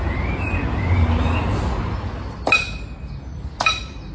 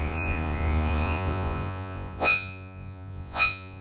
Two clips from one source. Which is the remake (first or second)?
second